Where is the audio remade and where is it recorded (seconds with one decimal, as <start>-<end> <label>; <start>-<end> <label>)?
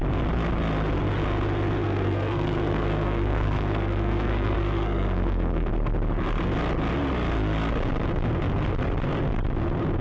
0.0-1.8 recorded; 1.8-5.7 remade; 5.7-10.0 recorded